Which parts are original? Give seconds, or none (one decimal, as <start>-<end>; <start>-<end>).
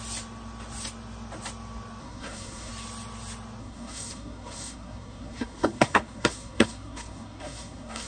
0.0-2.0; 2.7-3.6